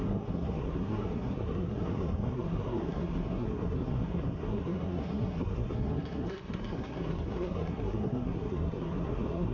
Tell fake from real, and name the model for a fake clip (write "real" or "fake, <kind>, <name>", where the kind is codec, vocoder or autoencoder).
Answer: fake, codec, SNAC